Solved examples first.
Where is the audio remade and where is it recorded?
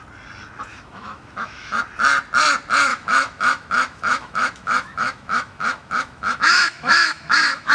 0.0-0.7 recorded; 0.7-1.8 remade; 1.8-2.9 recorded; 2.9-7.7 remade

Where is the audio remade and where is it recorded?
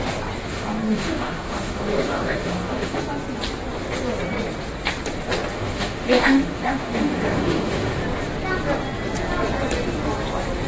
0.0-0.5 recorded; 0.5-3.0 remade; 3.0-5.5 recorded; 5.5-8.0 remade; 8.0-10.7 recorded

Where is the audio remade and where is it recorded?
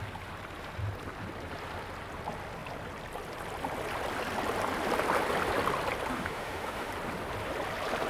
0.0-6.1 recorded; 6.1-6.9 remade; 6.9-8.1 recorded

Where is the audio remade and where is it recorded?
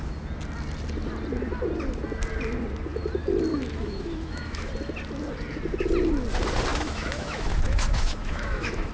0.0-3.5 recorded; 3.5-4.7 remade; 4.7-6.7 recorded; 6.7-8.9 remade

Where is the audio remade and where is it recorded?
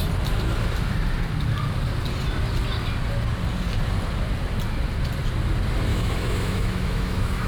0.0-5.9 recorded; 5.9-7.5 remade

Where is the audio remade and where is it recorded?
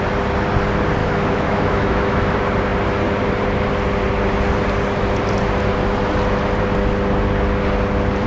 0.0-1.0 recorded; 1.0-2.3 remade; 2.3-8.3 recorded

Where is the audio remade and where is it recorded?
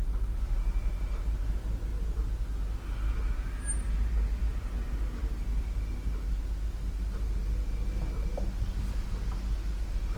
0.0-10.2 recorded